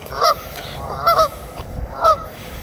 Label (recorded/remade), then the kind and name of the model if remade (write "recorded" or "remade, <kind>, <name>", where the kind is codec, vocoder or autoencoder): remade, codec, DAC